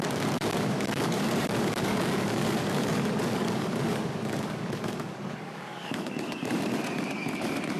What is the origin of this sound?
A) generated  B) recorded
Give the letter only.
A